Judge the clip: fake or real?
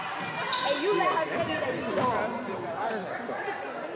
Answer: real